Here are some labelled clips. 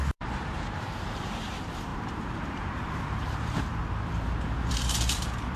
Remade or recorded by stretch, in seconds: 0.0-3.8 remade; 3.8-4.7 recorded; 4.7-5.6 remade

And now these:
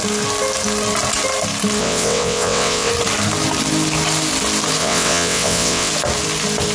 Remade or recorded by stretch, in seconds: 0.0-1.8 recorded; 1.8-2.9 remade; 2.9-4.8 recorded; 4.8-5.9 remade; 5.9-6.7 recorded

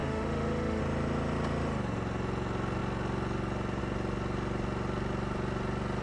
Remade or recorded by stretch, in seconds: 0.0-0.8 remade; 0.8-6.0 recorded

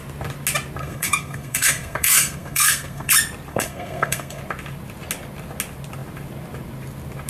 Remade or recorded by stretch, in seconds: 0.0-0.8 recorded; 0.8-3.1 remade; 3.1-3.5 recorded; 3.5-4.4 remade; 4.4-7.3 recorded

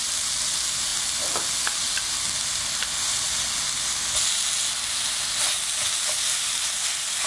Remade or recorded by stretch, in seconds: 0.0-7.3 recorded

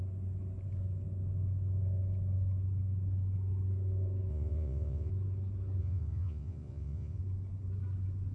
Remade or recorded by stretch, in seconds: 0.0-4.3 recorded; 4.3-5.1 remade; 5.1-5.8 recorded; 5.8-7.2 remade; 7.2-8.3 recorded

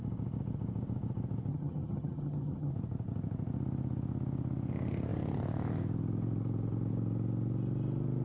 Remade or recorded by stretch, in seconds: 0.0-1.5 recorded; 1.5-2.7 remade; 2.7-8.2 recorded